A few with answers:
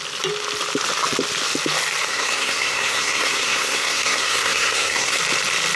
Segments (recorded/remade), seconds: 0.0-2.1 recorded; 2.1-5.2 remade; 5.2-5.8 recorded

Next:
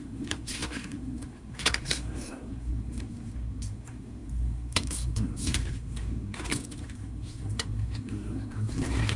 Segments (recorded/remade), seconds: 0.0-9.2 remade

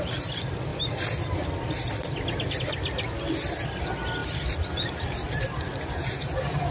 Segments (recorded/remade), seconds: 0.0-6.7 recorded

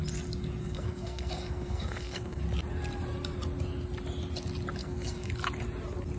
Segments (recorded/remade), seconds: 0.0-0.6 recorded; 0.6-2.4 remade; 2.4-4.8 recorded; 4.8-5.3 remade; 5.3-6.2 recorded